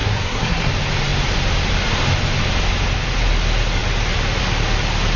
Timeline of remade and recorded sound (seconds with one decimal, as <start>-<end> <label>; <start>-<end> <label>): 0.0-0.7 remade; 0.7-5.2 recorded